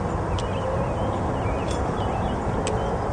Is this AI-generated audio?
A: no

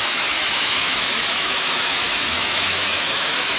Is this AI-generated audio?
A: yes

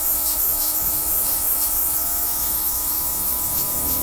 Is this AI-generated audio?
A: yes